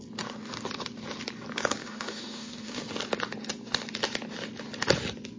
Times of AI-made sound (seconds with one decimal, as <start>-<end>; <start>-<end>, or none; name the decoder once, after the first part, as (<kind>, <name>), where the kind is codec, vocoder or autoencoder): 1.8-2.8 (autoencoder, DAC-VAE)